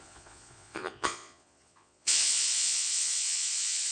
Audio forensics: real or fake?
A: fake